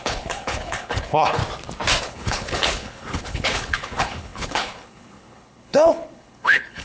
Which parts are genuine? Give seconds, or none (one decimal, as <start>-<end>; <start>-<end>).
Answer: 1.4-2.0